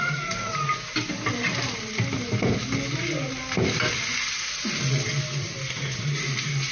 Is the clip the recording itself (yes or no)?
yes